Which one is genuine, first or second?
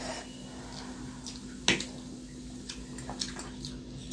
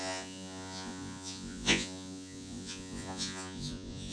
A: first